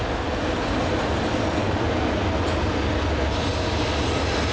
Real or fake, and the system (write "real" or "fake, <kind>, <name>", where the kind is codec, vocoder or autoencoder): real